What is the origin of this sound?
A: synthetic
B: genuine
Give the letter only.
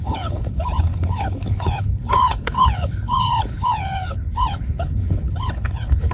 A